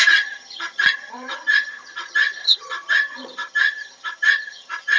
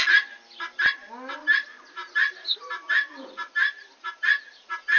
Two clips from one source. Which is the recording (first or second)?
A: second